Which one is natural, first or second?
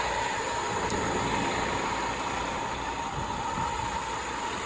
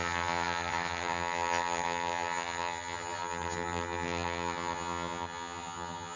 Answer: first